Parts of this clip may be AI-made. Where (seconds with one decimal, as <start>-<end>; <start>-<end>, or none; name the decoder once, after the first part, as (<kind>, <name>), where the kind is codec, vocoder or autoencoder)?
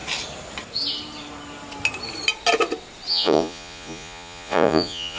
3.1-5.2 (vocoder, Vocos)